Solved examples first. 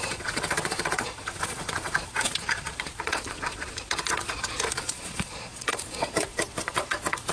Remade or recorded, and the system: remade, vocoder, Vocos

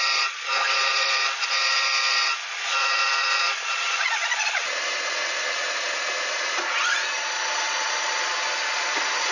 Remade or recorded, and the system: remade, vocoder, Vocos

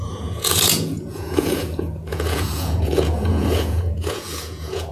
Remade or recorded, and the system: remade, vocoder, Vocos